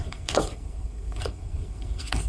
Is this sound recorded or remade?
remade